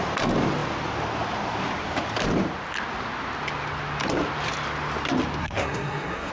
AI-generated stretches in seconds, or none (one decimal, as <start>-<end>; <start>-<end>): 5.4-6.3